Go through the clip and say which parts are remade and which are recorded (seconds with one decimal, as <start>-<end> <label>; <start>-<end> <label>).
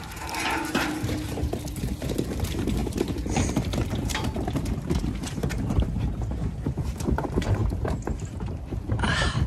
0.0-9.5 remade